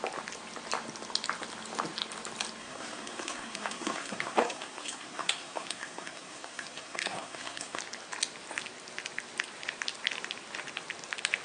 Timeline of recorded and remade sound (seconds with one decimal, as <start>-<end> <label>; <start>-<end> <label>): 0.0-2.6 recorded; 2.6-7.8 remade; 7.8-11.4 recorded